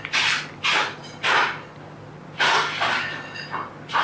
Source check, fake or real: real